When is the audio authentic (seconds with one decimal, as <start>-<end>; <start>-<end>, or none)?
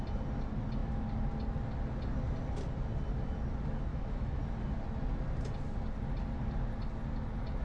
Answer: 0.0-3.9; 4.4-7.6